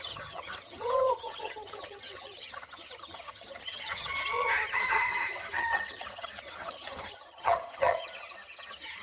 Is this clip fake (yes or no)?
yes